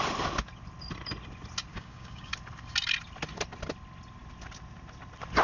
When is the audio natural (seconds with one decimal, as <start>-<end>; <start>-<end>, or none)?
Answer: 0.0-1.7; 2.3-5.4